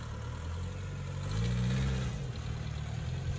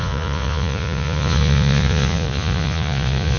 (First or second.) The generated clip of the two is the second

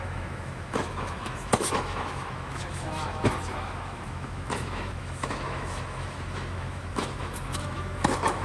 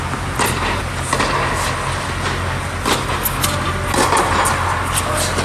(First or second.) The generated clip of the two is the first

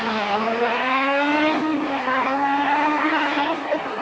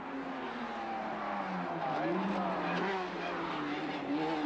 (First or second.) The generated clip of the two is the first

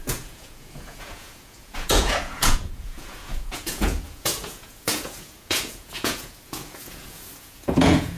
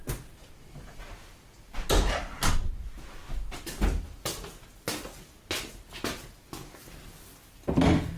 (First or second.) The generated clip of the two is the first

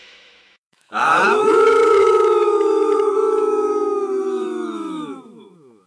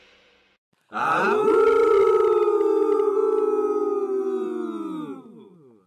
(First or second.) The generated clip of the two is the first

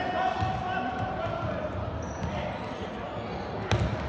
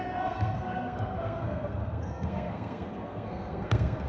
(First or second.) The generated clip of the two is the second